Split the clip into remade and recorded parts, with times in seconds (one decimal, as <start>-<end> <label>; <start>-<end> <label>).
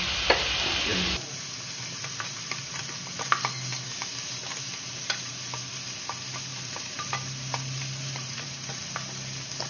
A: 0.0-6.5 recorded; 6.5-8.8 remade; 8.8-9.7 recorded